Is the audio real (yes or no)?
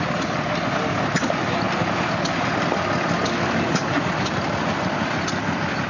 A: yes